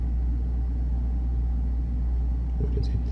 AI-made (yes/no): no